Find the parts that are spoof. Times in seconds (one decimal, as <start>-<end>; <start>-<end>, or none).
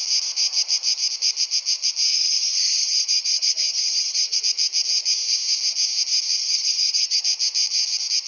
2.1-4.4; 6.4-7.2